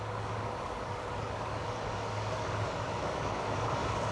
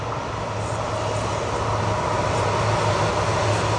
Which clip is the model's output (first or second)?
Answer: first